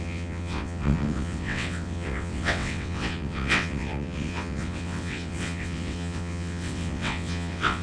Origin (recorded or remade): remade